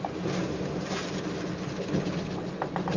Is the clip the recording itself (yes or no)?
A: yes